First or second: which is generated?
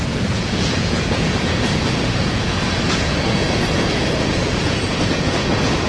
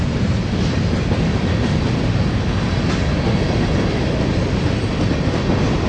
first